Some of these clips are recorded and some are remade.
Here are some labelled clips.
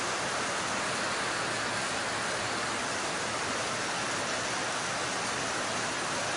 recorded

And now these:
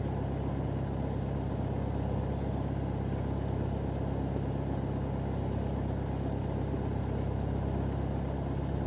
recorded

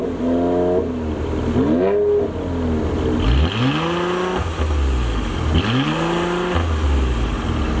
recorded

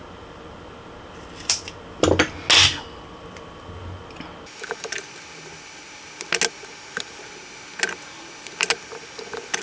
recorded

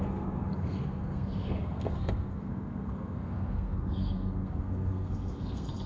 remade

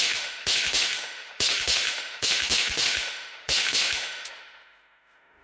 remade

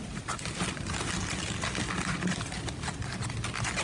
recorded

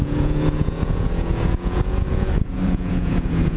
remade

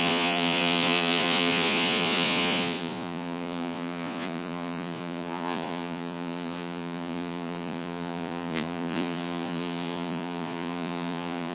remade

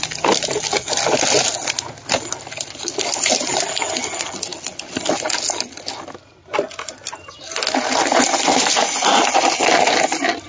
recorded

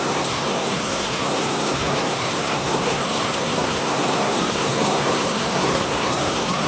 remade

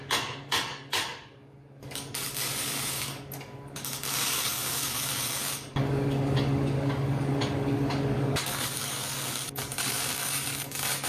remade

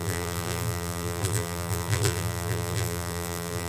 remade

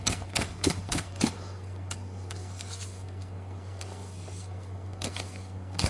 remade